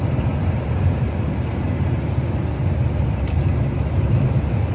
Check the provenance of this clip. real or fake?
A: fake